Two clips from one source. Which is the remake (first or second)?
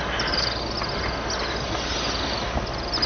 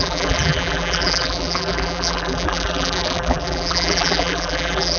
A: second